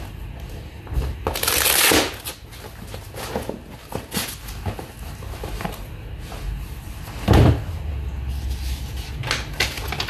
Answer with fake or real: real